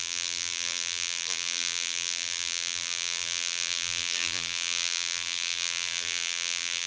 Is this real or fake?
fake